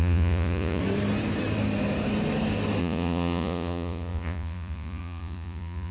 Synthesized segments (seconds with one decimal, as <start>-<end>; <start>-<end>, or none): 0.0-0.8; 2.8-5.9